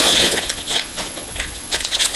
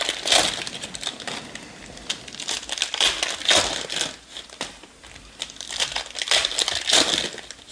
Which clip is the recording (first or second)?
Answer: second